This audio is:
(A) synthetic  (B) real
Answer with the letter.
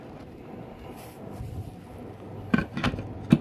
B